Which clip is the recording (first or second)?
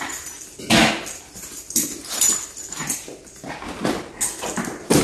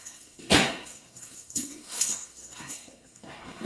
first